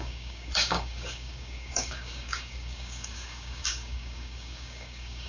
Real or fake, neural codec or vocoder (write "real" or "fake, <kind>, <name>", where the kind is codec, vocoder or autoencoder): fake, codec, DAC